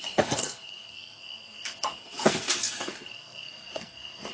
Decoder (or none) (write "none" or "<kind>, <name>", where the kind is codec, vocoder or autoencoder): codec, SNAC